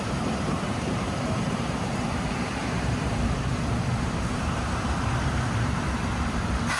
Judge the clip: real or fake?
fake